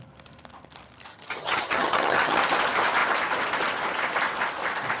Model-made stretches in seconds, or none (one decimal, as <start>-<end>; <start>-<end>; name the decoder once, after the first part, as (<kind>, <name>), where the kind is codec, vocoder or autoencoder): 1.1-2.4 (vocoder, HiFi-GAN)